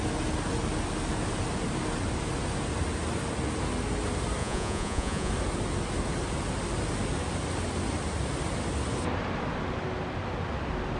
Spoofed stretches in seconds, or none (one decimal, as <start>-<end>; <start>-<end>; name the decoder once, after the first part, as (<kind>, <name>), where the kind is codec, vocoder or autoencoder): 4.4-5.3 (vocoder, Vocos)